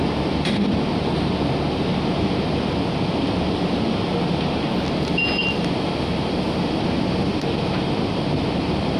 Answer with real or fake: real